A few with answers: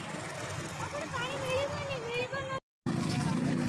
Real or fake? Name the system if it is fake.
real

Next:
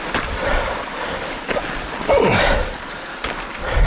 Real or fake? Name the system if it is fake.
real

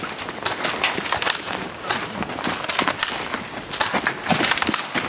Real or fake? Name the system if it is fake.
real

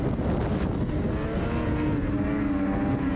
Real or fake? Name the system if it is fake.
real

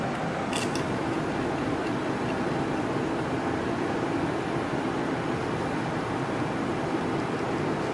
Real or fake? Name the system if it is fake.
real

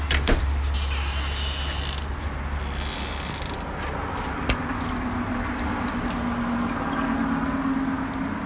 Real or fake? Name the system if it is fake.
real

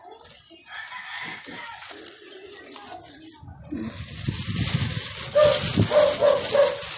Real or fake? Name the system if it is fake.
real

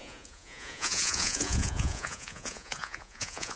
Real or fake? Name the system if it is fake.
fake, vocoder, Vocos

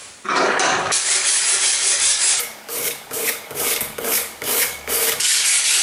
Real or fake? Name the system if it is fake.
fake, codec, DAC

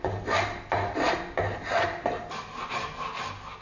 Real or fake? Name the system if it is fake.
real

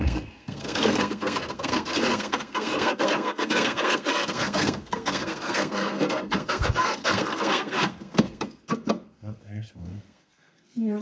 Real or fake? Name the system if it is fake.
fake, codec, SNAC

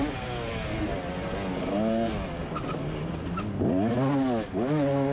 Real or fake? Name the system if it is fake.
real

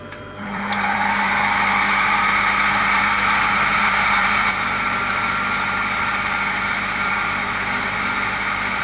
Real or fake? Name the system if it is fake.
fake, vocoder, BigVGAN v2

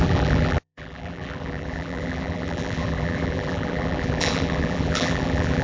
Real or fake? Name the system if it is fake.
fake, vocoder, BigVGAN v2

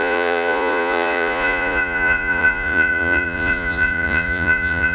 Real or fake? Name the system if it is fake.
fake, vocoder, Vocos